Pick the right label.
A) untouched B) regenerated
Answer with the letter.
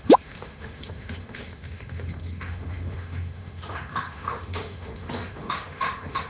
B